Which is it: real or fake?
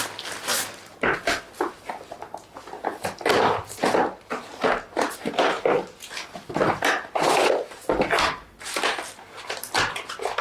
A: real